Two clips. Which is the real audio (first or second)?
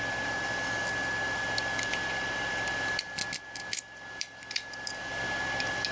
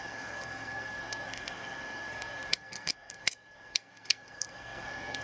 first